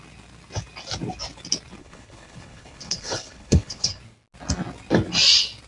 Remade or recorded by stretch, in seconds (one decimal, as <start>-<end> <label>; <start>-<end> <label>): 0.0-1.8 recorded; 1.8-4.0 remade; 4.0-5.7 recorded